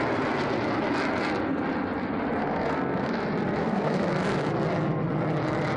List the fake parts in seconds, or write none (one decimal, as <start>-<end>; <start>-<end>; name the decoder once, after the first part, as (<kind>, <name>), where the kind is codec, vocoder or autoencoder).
2.4-3.2 (codec, SNAC); 3.6-4.5